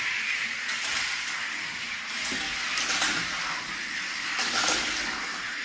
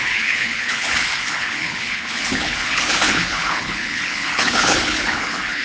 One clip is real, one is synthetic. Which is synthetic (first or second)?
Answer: second